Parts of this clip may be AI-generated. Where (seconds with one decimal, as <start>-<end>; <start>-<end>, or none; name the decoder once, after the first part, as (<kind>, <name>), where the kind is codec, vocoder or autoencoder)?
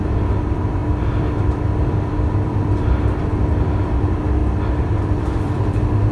0.0-4.4 (vocoder, BigVGAN v2); 5.2-6.1